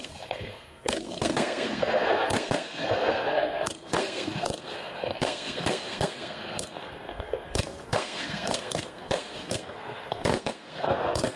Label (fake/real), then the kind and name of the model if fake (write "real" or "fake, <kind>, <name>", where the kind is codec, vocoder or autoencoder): fake, codec, SNAC